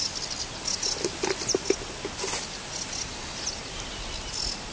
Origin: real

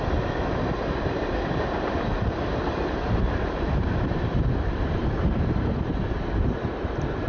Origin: fake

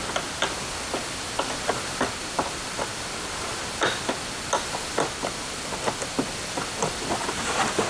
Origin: real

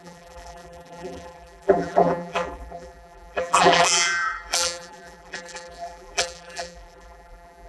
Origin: fake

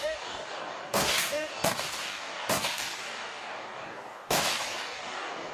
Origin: fake